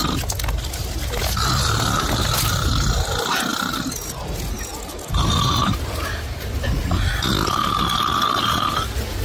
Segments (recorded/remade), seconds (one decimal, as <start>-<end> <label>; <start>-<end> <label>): 0.0-9.2 recorded